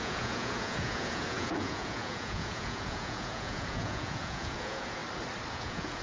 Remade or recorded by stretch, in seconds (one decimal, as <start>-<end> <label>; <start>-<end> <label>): 0.0-5.0 remade; 5.0-5.5 recorded; 5.5-6.0 remade